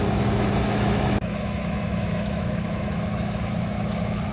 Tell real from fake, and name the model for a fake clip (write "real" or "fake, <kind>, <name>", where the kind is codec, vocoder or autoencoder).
fake, autoencoder, DAC-VAE